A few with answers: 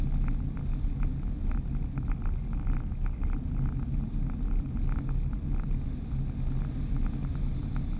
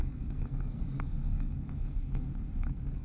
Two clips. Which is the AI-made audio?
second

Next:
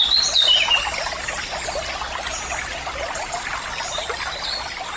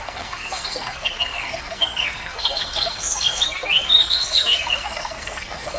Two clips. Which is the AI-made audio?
second